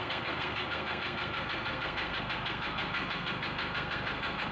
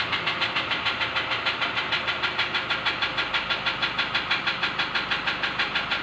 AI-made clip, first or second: first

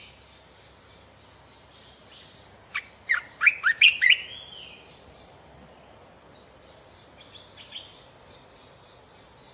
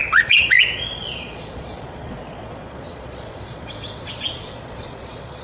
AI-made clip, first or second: second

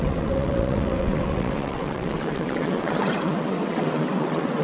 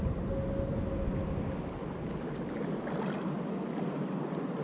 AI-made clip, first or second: first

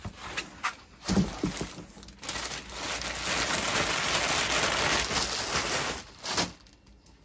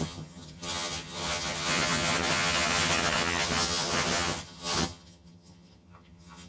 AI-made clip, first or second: second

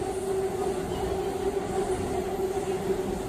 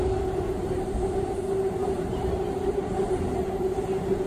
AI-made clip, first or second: second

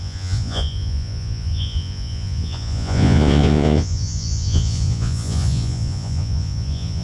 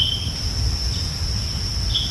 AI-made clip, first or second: first